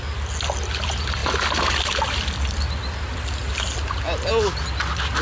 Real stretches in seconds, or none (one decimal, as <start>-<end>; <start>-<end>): 0.0-1.2; 4.3-5.2